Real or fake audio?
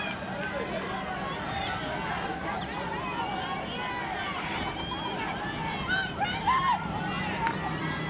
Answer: real